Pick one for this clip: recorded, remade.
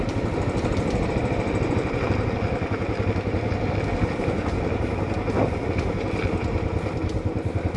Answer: recorded